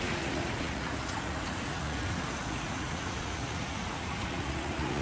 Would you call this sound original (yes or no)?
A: no